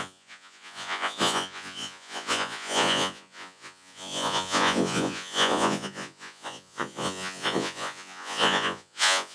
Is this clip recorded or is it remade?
remade